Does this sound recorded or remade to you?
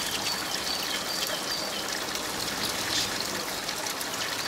recorded